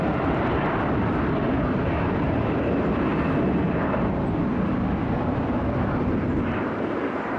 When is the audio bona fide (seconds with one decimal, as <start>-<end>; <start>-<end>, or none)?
3.1-4.8